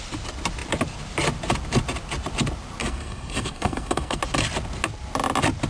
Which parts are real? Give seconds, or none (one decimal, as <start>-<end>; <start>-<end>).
0.0-2.8; 4.2-5.7